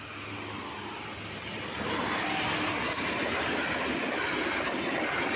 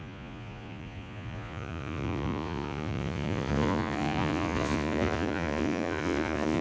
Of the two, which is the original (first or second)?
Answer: first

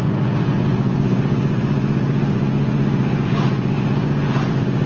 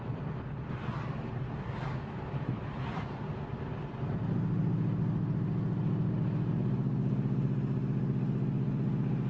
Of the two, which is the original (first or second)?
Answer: second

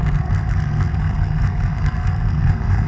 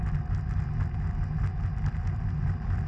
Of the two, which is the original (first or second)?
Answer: second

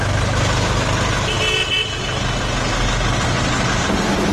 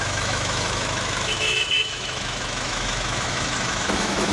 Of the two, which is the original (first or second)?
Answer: first